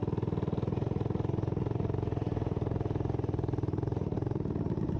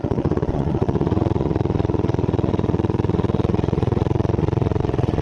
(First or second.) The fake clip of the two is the second